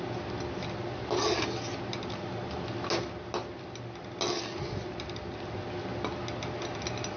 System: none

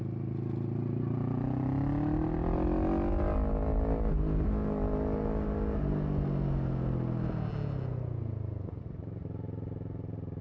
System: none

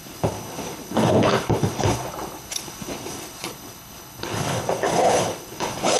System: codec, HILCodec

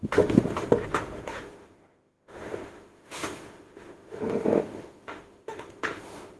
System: autoencoder, DAC-VAE